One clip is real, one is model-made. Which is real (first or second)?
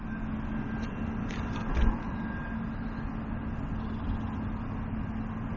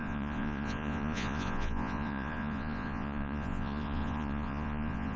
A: first